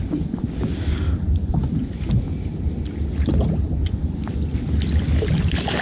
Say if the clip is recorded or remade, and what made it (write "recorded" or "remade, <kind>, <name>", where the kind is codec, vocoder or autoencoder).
recorded